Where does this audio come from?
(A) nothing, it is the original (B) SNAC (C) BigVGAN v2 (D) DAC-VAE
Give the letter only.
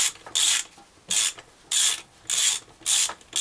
A